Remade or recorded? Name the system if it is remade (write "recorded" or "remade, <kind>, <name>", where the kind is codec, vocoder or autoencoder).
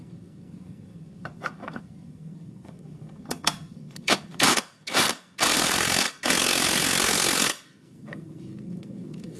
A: remade, codec, SNAC